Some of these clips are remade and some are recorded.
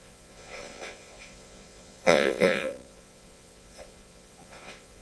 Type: remade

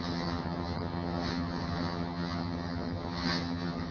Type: remade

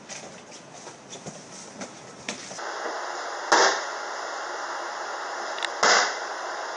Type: recorded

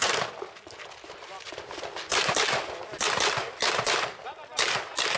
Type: recorded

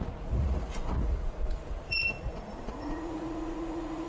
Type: remade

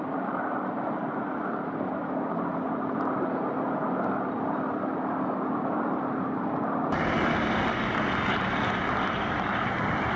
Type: recorded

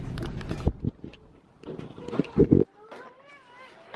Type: recorded